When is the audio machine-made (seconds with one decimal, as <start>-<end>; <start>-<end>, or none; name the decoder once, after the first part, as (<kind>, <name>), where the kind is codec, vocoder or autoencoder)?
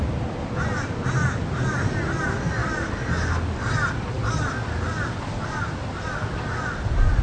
0.0-2.6 (vocoder, BigVGAN v2)